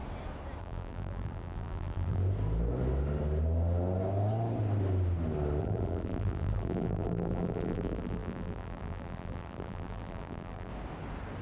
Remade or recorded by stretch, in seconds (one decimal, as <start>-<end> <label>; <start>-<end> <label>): 0.0-0.6 recorded; 0.6-2.2 remade; 2.2-5.6 recorded; 5.6-10.7 remade; 10.7-11.4 recorded